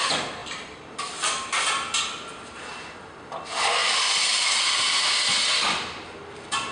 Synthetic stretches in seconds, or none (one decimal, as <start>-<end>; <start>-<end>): 0.4-2.0; 3.8-5.5